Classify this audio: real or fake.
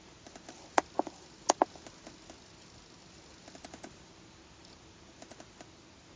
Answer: real